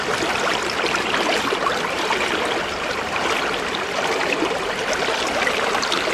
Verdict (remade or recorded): recorded